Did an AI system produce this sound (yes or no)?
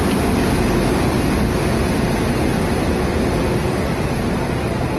no